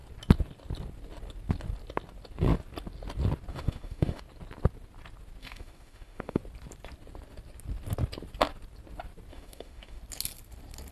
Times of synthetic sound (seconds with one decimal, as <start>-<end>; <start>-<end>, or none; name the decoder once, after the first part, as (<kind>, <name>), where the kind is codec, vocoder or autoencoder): 3.5-4.2 (autoencoder, DAC-VAE); 5.4-6.4; 9.3-10.0